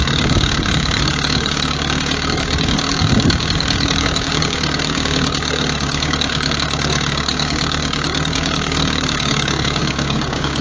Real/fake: fake